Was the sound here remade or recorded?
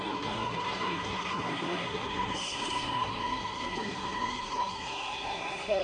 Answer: remade